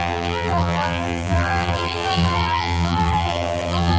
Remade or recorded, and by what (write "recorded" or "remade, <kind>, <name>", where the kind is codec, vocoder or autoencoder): remade, vocoder, BigVGAN v2